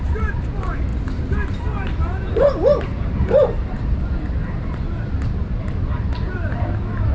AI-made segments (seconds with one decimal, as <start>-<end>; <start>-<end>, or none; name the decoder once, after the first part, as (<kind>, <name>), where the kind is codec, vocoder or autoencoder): 0.0-0.9 (vocoder, BigVGAN v2); 1.6-4.4